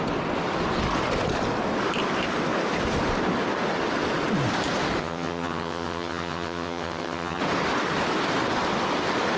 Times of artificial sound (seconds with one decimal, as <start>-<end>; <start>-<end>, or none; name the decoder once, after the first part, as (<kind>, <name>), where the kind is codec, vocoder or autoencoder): 5.0-7.4 (vocoder, HiFi-GAN)